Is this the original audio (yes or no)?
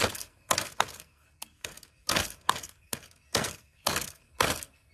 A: no